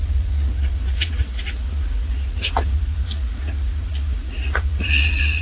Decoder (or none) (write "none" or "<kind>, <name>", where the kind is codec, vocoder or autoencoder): vocoder, Vocos